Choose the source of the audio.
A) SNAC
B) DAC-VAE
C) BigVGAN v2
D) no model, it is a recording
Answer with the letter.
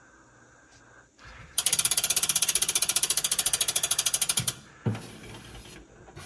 D